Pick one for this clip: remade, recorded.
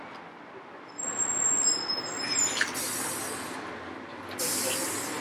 recorded